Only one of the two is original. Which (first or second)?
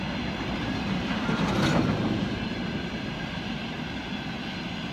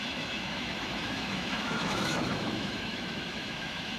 first